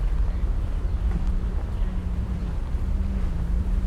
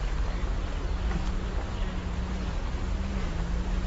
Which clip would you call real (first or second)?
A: second